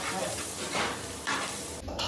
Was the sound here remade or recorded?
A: remade